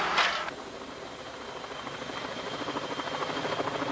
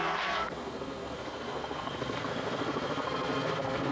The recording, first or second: first